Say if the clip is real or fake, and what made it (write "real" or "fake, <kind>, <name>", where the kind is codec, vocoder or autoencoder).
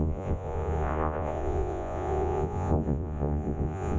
fake, vocoder, Vocos